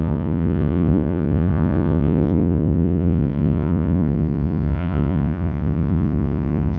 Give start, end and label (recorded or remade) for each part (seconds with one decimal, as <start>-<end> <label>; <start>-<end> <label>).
0.0-6.8 remade